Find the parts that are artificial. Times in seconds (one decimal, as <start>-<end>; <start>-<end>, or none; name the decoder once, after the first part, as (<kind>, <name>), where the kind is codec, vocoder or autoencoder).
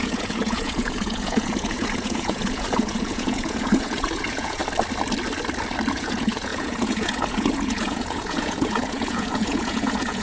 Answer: 0.0-4.6 (vocoder, Vocos); 5.9-10.2